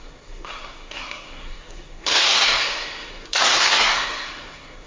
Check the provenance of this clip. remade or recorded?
remade